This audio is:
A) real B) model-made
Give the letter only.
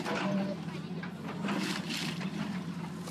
A